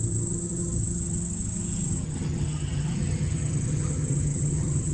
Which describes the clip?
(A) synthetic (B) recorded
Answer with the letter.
A